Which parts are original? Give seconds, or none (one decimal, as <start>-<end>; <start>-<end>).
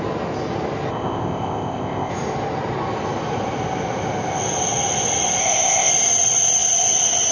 0.0-0.9; 2.1-5.4; 5.9-7.3